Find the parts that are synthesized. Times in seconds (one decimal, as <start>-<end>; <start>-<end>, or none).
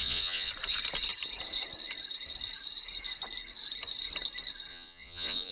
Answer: 0.0-0.5; 4.7-5.5